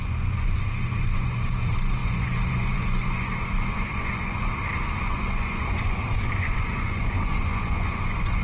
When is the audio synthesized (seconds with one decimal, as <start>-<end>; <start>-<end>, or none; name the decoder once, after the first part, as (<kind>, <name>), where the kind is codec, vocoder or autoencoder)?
0.0-4.5 (vocoder, Vocos); 5.0-8.4